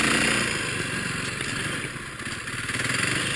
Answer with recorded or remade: recorded